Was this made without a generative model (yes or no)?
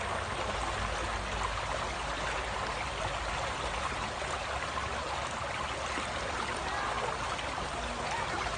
yes